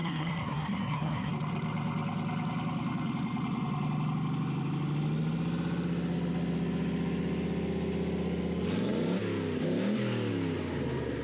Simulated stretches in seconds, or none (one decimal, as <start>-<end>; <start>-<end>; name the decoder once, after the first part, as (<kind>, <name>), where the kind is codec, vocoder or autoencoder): 0.0-1.3 (codec, SNAC)